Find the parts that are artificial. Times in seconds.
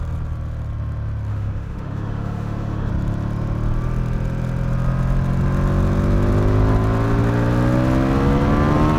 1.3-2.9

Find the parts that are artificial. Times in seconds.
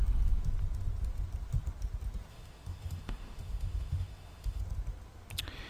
2.3-4.6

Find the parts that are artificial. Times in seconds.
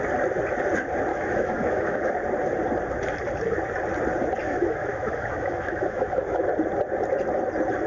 1.1-2.1; 4.4-6.4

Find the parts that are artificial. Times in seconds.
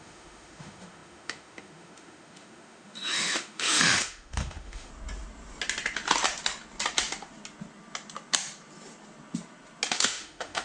0.0-4.9; 9.9-10.6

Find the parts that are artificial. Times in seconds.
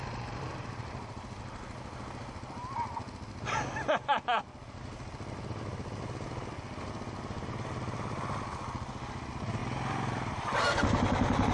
none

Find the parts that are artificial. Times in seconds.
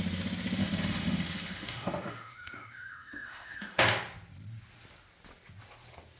0.6-3.8